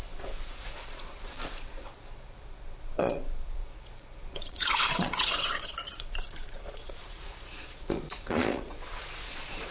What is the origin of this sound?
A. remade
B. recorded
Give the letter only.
A